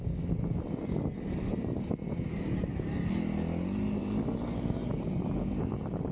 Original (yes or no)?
yes